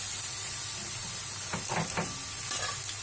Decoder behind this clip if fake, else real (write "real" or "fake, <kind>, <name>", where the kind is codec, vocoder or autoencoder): real